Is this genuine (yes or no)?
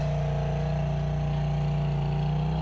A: yes